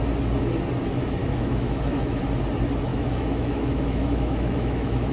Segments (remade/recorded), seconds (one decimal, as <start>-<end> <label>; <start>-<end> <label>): 0.0-1.2 recorded; 1.2-2.2 remade; 2.2-2.9 recorded; 2.9-5.1 remade